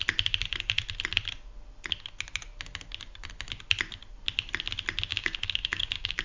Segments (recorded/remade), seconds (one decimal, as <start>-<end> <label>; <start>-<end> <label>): 0.0-5.1 recorded; 5.1-6.2 remade